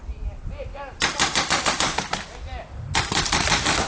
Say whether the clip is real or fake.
real